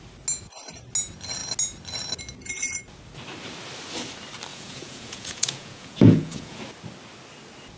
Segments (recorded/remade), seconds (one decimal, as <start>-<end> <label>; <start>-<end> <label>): 0.0-4.5 recorded; 4.5-6.6 remade; 6.6-7.8 recorded